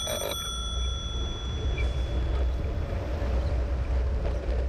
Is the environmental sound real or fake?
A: real